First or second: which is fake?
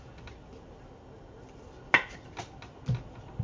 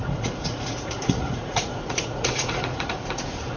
second